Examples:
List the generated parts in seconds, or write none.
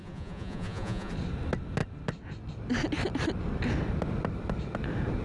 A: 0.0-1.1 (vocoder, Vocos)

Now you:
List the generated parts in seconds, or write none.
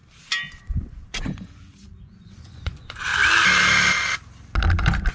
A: 0.6-3.1 (vocoder, Vocos)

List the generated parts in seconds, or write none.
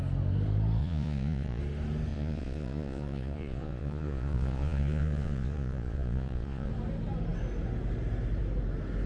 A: 0.8-1.6 (vocoder, Vocos); 2.1-6.7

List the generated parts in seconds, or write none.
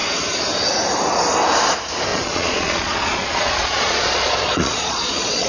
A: 2.1-5.5 (vocoder, Vocos)